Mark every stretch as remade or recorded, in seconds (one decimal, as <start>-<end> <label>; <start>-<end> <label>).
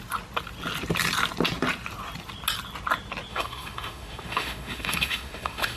0.0-3.3 recorded; 3.3-5.8 remade